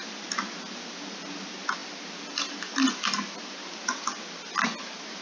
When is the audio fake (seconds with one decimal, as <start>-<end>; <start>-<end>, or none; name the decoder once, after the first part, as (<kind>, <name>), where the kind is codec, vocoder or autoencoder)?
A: none